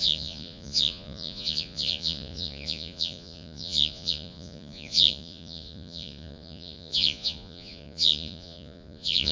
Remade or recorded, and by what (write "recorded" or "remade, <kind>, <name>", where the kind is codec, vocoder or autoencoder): remade, vocoder, Vocos